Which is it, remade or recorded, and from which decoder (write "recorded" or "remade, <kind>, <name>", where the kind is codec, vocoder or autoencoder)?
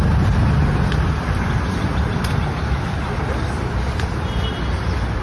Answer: recorded